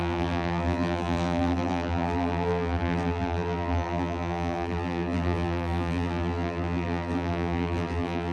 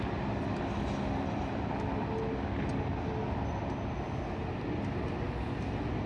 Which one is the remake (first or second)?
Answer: first